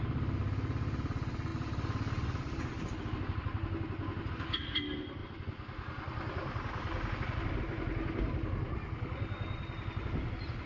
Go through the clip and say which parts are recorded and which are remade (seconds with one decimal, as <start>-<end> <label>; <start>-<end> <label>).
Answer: 0.0-5.2 recorded; 5.2-7.6 remade; 7.6-10.7 recorded